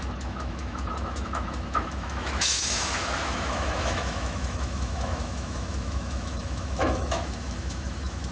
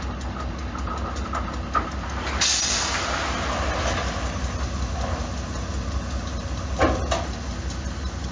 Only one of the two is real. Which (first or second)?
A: second